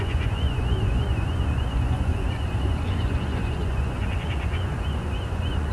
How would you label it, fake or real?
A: fake